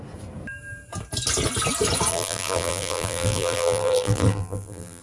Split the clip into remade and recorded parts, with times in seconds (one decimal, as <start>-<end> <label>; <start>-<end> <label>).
0.0-2.1 recorded; 2.1-5.0 remade